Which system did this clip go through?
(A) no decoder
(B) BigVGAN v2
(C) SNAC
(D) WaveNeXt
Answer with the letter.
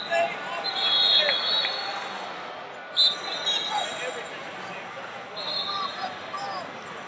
A